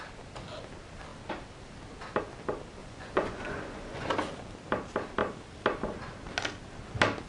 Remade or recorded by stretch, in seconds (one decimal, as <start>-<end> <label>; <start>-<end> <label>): 0.0-2.8 recorded; 2.8-4.1 remade; 4.1-7.3 recorded